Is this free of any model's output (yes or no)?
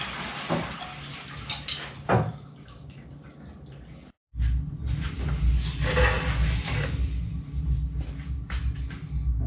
yes